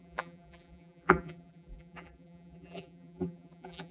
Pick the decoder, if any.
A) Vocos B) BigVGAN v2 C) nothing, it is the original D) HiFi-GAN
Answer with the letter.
B